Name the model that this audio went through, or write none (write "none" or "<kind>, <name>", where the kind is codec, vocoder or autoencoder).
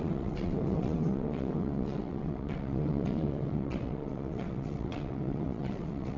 vocoder, WaveNeXt